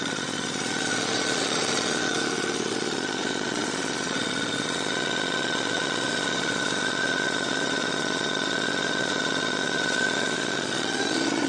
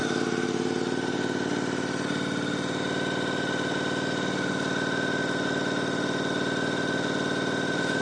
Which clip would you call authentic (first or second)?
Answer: second